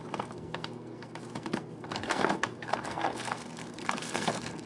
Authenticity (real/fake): fake